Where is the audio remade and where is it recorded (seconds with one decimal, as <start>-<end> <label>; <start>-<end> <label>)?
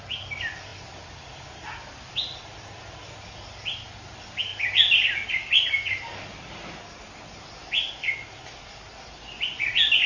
0.0-10.1 recorded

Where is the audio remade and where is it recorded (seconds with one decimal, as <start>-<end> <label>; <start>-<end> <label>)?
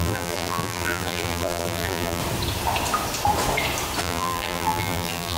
0.0-2.2 remade; 2.2-4.0 recorded; 4.0-5.4 remade